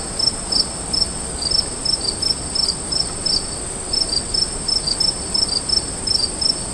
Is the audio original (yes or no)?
yes